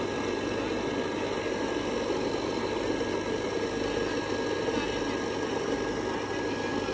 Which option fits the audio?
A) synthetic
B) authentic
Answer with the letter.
B